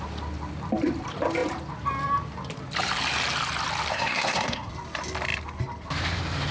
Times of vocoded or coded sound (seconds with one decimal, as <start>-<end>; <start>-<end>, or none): 3.9-4.7